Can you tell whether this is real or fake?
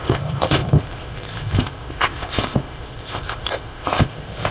fake